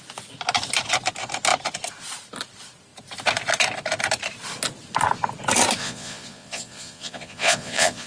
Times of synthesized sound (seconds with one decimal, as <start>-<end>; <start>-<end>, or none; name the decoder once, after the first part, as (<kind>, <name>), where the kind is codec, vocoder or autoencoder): 5.8-8.1 (vocoder, Vocos)